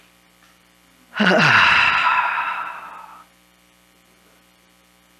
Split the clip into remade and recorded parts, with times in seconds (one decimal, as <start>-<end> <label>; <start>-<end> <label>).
0.0-5.2 recorded